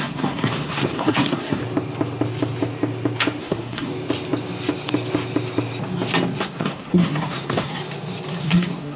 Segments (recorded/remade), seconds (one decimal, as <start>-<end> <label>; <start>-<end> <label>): 0.0-1.6 remade; 1.6-3.4 recorded; 3.4-3.9 remade; 3.9-6.4 recorded; 6.4-7.8 remade; 7.8-8.4 recorded; 8.4-9.0 remade